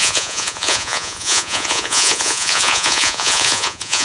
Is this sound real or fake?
fake